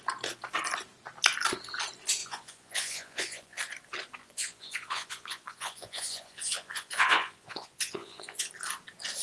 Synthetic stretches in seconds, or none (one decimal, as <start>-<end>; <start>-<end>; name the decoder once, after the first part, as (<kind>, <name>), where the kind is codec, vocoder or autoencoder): 2.2-3.6 (vocoder, Vocos); 4.2-8.5